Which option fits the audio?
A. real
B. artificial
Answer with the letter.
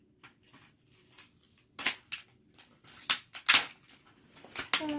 A